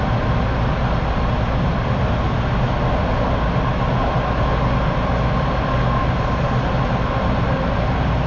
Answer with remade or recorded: recorded